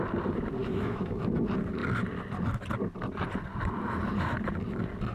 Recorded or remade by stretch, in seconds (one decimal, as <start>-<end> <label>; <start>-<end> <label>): 0.0-0.6 recorded; 0.6-1.4 remade; 1.4-5.1 recorded